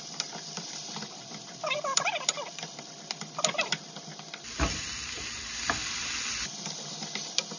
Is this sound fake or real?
fake